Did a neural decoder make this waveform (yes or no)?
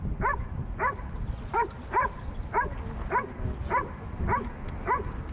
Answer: no